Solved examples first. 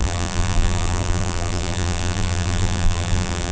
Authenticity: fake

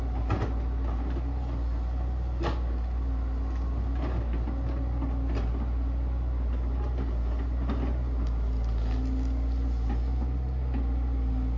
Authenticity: real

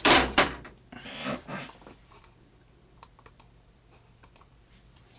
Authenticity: fake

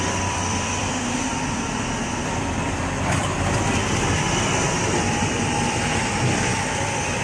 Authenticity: fake